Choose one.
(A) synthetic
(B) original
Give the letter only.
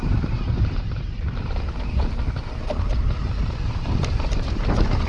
A